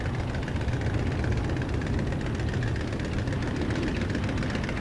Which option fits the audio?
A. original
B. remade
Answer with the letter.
A